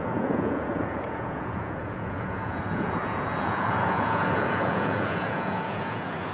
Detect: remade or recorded remade